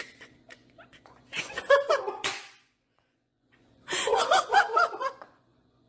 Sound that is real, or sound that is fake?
fake